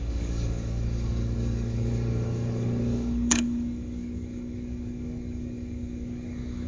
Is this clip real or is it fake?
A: fake